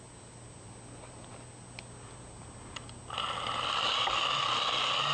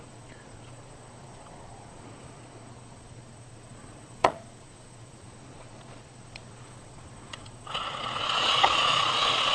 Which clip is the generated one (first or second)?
second